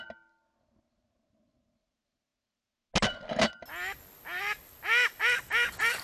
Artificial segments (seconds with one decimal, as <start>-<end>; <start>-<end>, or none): none